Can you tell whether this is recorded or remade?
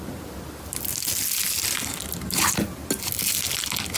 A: recorded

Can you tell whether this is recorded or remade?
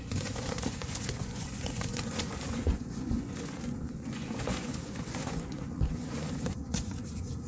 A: remade